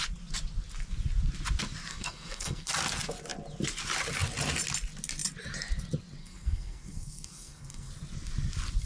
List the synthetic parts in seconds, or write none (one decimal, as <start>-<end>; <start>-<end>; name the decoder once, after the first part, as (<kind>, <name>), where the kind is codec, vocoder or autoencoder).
1.9-2.7 (codec, SNAC); 6.2-7.9